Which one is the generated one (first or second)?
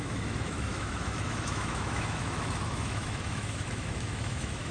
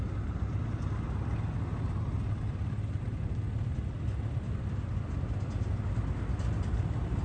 first